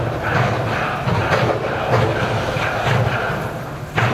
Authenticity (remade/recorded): recorded